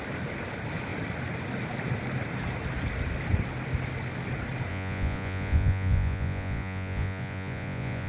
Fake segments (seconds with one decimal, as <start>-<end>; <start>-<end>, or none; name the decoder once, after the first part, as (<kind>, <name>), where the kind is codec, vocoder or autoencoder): 4.7-8.1 (vocoder, Vocos)